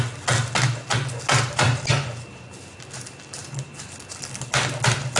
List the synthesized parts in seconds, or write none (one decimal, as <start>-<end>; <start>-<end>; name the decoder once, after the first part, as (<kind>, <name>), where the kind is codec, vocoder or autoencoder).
none